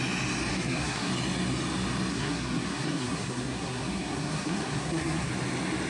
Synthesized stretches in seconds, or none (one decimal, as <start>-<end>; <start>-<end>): 0.5-1.1; 2.1-5.3